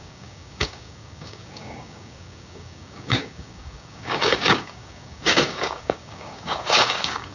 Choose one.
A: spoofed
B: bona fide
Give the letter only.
A